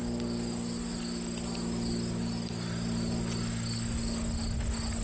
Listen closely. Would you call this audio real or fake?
real